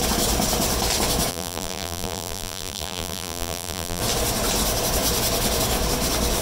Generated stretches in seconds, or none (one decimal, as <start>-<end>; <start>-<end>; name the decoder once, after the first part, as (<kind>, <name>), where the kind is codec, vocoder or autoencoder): 1.3-4.0 (vocoder, BigVGAN v2)